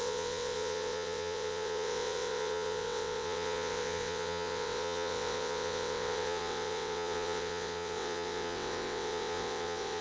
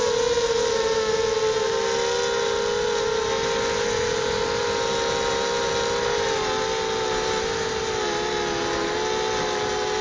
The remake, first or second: first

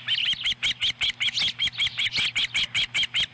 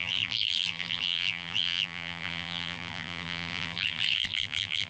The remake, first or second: second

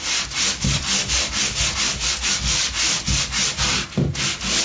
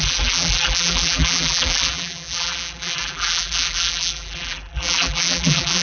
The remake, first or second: second